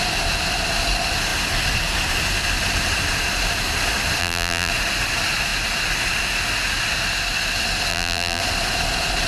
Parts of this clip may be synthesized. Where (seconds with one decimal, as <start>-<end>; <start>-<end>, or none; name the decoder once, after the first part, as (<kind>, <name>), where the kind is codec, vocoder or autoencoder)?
4.2-4.7 (vocoder, BigVGAN v2); 7.9-8.4